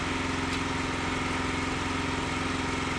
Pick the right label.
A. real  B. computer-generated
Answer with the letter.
A